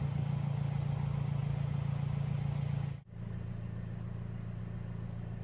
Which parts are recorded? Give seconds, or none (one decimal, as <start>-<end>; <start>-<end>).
0.0-5.4